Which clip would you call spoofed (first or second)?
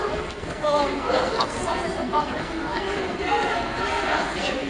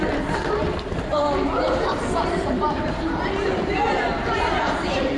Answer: first